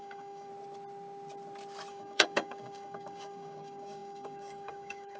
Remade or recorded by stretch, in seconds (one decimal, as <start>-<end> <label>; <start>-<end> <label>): 0.0-0.5 remade; 0.5-1.9 recorded; 1.9-5.2 remade

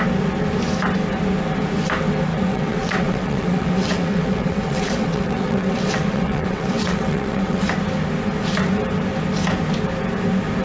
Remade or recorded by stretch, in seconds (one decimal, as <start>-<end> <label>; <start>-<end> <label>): 0.0-2.3 recorded; 2.3-7.6 remade; 7.6-10.6 recorded

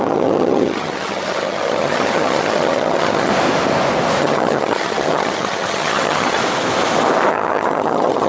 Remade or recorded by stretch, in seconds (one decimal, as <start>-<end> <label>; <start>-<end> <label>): 0.0-3.3 remade; 3.3-4.2 recorded; 4.2-6.4 remade; 6.4-7.3 recorded; 7.3-8.3 remade